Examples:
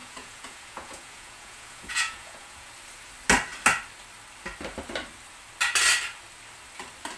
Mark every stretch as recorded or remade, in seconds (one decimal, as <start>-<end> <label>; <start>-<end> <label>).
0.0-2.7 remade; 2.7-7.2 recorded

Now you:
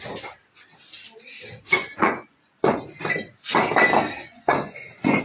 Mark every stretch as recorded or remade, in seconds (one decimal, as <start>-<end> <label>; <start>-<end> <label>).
0.0-1.8 recorded; 1.8-2.8 remade; 2.8-4.2 recorded; 4.2-5.2 remade

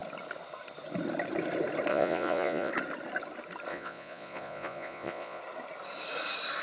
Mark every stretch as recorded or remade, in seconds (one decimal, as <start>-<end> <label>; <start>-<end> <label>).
0.0-1.9 recorded; 1.9-2.7 remade; 2.7-3.7 recorded; 3.7-5.4 remade; 5.4-6.6 recorded

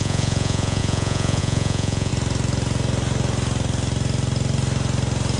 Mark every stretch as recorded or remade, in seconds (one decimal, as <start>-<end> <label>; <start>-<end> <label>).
0.0-2.1 remade; 2.1-5.4 recorded

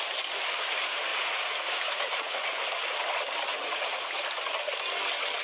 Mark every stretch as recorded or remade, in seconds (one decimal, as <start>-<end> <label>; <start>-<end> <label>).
0.0-1.1 recorded; 1.1-2.6 remade; 2.6-3.5 recorded; 3.5-4.2 remade; 4.2-5.4 recorded

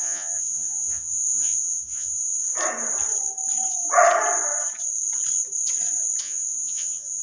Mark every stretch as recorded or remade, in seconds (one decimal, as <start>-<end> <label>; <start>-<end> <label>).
0.0-2.5 remade; 2.5-6.2 recorded; 6.2-7.2 remade

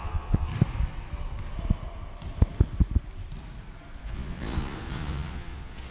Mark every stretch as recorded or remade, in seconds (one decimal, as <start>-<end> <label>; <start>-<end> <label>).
0.0-0.5 remade; 0.5-4.0 recorded; 4.0-5.9 remade